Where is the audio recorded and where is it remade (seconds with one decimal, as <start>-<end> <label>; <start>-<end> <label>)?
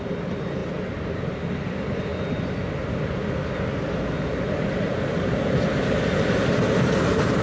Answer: 0.0-7.4 recorded